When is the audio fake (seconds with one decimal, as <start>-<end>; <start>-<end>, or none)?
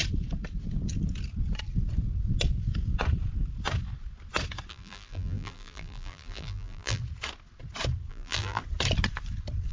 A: 4.7-7.0; 8.1-8.6